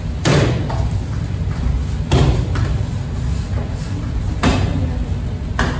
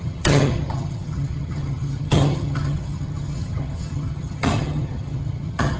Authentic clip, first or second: first